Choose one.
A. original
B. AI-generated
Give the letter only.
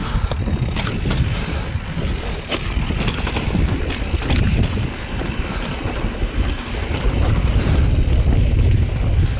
A